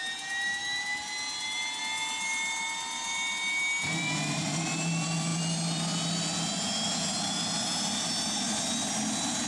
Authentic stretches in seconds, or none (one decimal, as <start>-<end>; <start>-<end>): 0.0-9.5